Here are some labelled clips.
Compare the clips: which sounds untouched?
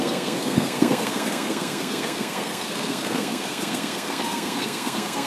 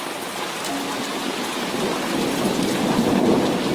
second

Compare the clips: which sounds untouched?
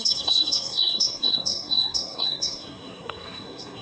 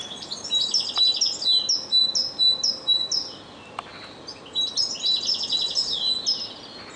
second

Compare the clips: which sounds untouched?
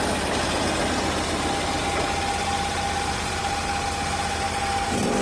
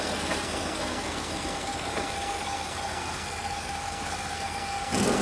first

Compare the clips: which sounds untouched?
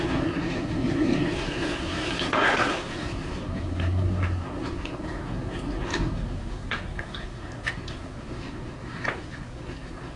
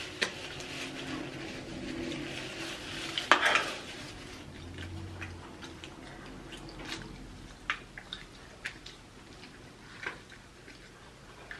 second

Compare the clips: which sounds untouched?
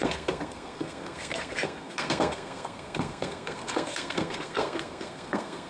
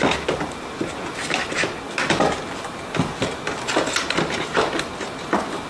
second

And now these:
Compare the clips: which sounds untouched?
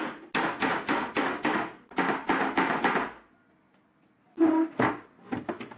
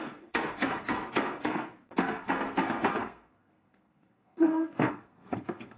first